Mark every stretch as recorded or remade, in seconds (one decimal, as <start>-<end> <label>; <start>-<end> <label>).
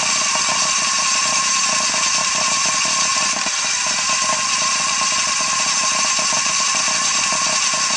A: 0.0-8.0 recorded